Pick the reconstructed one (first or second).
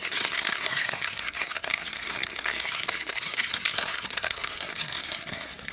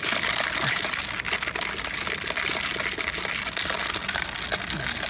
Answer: first